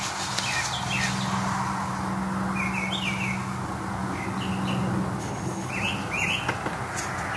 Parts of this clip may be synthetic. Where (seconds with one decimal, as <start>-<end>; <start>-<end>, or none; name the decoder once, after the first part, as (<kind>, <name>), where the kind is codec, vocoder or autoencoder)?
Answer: 5.2-5.7 (codec, HILCodec)